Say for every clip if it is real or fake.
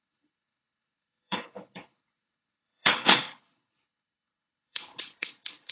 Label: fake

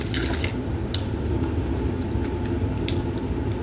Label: real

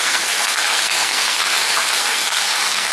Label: fake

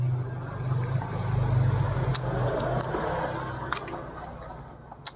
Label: real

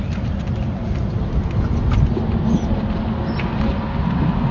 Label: real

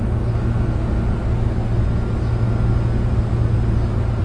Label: real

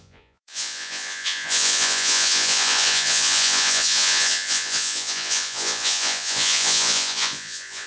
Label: fake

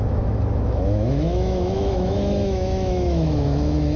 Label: fake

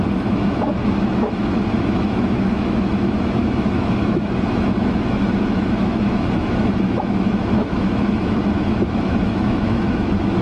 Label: fake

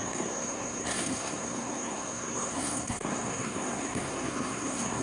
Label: fake